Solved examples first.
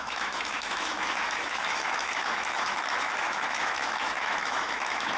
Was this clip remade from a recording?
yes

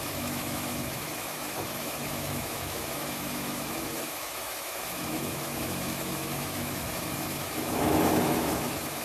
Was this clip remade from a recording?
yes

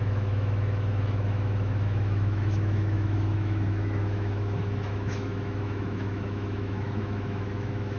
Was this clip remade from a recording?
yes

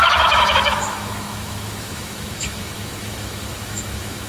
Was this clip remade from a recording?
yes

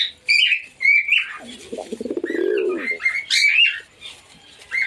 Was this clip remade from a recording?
no